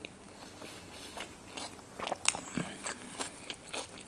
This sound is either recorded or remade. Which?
recorded